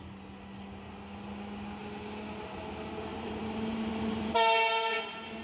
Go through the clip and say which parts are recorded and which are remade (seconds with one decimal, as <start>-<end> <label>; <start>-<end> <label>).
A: 0.0-3.1 recorded; 3.1-4.3 remade; 4.3-5.4 recorded